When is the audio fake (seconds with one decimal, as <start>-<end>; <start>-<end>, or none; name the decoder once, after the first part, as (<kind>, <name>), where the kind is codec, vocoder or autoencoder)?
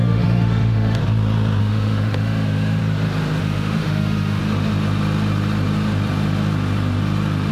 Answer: 0.0-1.0 (autoencoder, DAC-VAE); 1.6-2.8; 3.4-4.4